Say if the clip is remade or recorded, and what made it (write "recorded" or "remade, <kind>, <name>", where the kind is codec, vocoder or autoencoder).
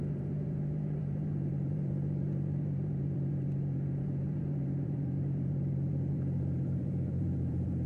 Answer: remade, vocoder, BigVGAN v2